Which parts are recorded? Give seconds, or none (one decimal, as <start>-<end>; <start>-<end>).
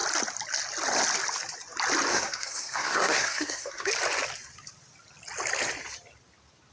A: 0.0-2.1; 3.9-6.7